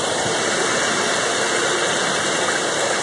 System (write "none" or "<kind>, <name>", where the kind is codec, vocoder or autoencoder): none